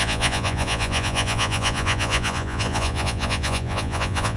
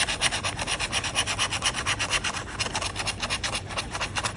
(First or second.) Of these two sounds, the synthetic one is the first